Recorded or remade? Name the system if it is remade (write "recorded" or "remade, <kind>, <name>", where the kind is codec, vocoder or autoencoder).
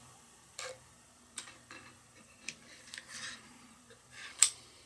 remade, vocoder, BigVGAN v2